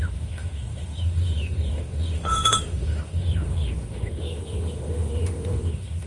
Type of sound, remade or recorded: remade